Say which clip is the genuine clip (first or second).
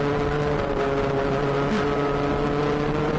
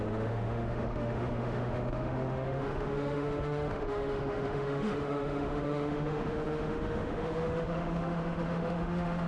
first